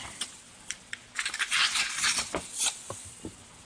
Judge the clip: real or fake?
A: real